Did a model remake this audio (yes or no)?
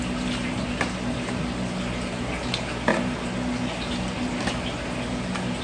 no